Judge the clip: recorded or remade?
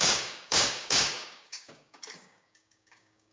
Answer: remade